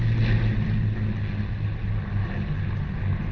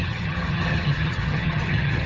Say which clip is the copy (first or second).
second